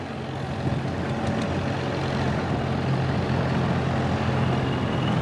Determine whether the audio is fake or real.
real